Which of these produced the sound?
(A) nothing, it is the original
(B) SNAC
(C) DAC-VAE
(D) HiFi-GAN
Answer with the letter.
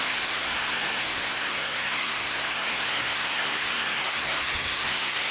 B